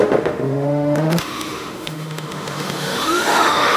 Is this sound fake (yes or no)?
yes